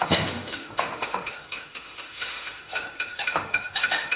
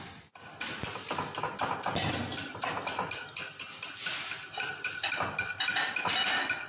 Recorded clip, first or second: second